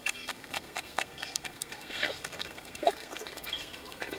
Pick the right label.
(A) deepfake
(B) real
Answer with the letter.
A